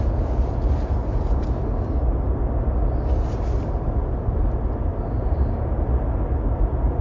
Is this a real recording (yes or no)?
yes